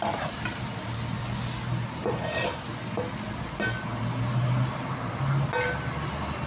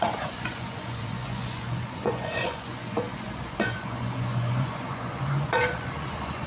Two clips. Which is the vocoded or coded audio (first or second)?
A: second